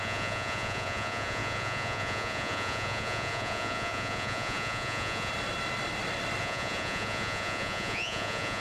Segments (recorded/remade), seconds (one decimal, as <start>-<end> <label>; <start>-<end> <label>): 0.0-5.3 remade; 5.3-6.4 recorded; 6.4-8.6 remade